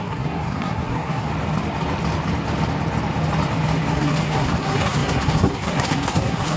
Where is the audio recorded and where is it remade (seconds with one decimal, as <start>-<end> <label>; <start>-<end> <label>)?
0.0-1.3 remade; 1.3-3.9 recorded; 3.9-6.6 remade